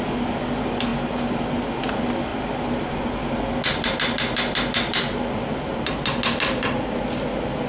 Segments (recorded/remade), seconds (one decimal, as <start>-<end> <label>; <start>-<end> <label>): 0.0-7.7 recorded